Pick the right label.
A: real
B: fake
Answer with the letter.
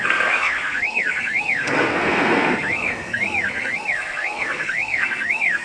B